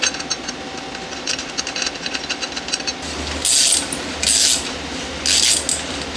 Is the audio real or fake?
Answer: real